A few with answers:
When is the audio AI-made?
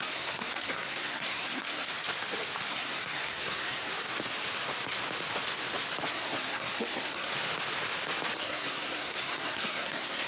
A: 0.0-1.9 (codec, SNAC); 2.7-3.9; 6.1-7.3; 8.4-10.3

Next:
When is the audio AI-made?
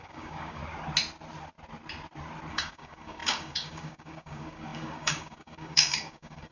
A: 0.0-0.6 (codec, DAC); 2.5-6.5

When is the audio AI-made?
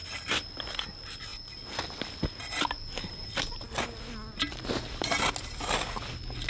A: 0.0-0.7 (vocoder, BigVGAN v2)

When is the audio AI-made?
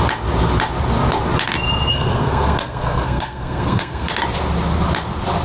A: 1.9-4.1 (codec, SNAC)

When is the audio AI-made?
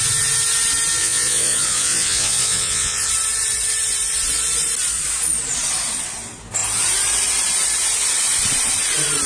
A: 1.0-3.1 (vocoder, Vocos)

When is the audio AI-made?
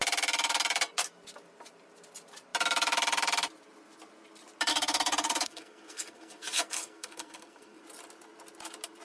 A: 4.7-7.8 (codec, SNAC)